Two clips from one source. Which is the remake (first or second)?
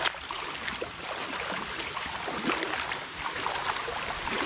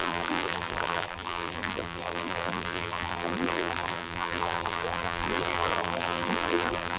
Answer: second